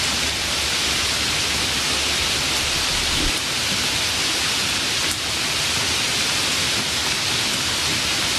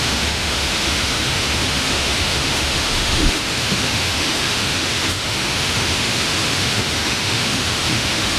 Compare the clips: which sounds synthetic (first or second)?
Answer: second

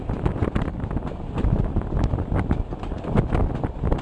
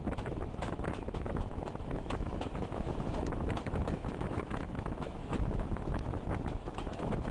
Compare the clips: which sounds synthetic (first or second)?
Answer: second